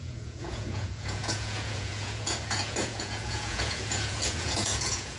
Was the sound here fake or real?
fake